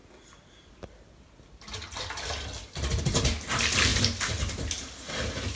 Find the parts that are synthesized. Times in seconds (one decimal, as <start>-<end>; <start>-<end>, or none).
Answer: none